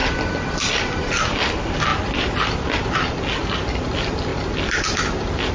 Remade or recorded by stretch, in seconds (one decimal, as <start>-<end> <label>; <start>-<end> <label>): 0.0-5.5 recorded